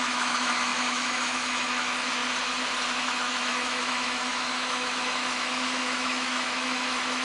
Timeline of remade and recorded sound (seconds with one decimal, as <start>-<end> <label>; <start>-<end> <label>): 0.0-2.2 remade; 2.2-3.0 recorded; 3.0-7.2 remade